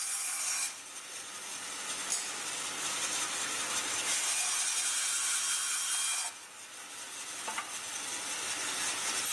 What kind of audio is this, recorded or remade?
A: recorded